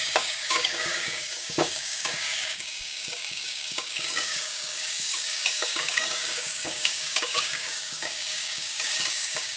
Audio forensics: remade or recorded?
remade